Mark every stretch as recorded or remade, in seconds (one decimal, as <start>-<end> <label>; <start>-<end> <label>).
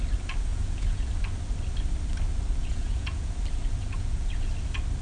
0.0-0.5 recorded; 0.5-1.1 remade; 1.1-2.6 recorded; 2.6-3.3 remade; 3.3-3.8 recorded; 3.8-4.5 remade; 4.5-5.0 recorded